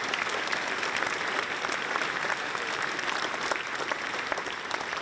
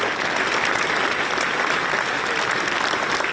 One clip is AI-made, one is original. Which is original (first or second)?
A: second